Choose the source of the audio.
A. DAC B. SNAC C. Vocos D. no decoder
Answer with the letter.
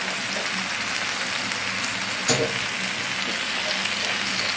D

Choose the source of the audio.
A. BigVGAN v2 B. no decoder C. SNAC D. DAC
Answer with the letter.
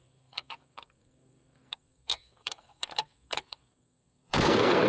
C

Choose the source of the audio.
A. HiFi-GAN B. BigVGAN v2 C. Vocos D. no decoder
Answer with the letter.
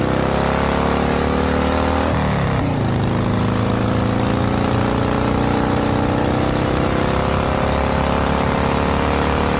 D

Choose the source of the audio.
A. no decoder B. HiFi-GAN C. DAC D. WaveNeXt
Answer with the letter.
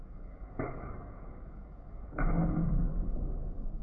C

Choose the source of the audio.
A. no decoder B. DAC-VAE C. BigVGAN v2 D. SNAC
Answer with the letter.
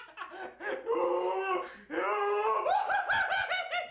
A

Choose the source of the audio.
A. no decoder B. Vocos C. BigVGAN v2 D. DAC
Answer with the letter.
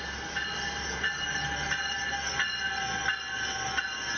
A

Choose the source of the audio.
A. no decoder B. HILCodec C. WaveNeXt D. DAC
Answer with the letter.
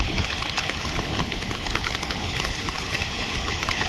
B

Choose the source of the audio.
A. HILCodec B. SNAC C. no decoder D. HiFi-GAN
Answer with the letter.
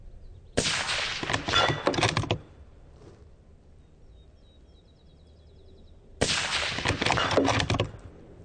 C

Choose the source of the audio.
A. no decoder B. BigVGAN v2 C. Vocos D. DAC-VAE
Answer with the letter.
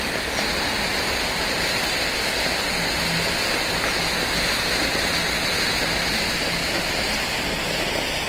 A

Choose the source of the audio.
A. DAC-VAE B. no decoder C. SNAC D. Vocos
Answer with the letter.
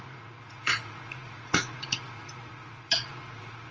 D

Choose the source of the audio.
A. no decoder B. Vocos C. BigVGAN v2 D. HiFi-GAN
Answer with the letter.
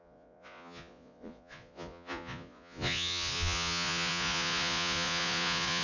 B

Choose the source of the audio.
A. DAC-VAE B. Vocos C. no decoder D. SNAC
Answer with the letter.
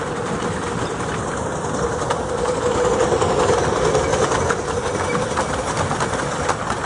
C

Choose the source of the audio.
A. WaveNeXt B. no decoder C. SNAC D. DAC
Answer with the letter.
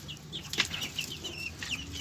B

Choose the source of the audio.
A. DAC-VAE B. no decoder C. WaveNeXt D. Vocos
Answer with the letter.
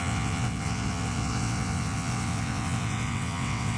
C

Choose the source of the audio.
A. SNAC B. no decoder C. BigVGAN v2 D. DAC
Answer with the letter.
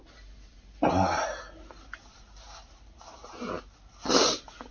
B